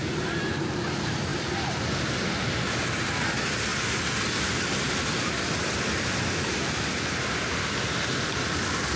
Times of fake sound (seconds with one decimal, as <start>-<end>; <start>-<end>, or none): 0.0-0.5; 1.3-2.3